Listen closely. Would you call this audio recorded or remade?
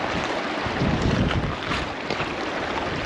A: recorded